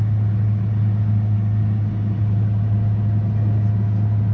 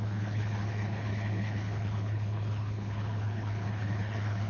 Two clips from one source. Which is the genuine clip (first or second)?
first